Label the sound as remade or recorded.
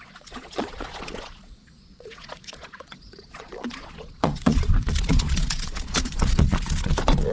remade